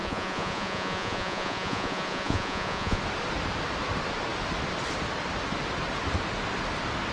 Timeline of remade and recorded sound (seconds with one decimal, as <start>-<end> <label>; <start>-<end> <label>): 0.0-3.0 remade; 3.0-7.1 recorded